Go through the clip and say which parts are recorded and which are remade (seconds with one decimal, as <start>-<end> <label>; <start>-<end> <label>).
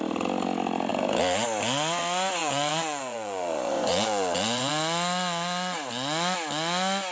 0.0-2.4 recorded; 2.4-4.7 remade; 4.7-7.1 recorded